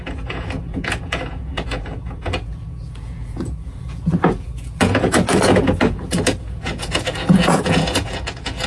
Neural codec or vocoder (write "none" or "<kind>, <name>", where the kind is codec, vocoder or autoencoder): vocoder, Vocos